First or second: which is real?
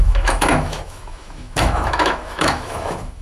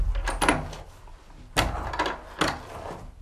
second